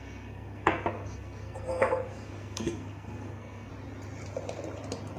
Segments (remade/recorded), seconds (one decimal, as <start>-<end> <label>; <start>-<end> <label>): 0.0-3.7 remade; 3.7-5.2 recorded